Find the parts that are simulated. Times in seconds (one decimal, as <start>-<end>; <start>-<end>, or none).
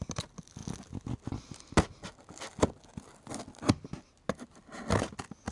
none